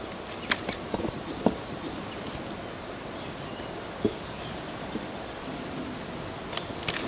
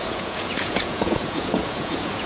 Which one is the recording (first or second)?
first